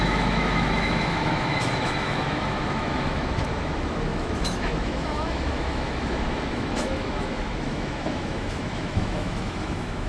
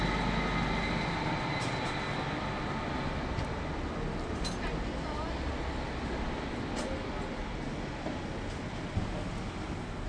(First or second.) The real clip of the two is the second